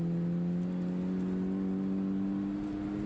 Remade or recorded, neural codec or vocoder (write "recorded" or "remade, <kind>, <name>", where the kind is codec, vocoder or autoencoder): recorded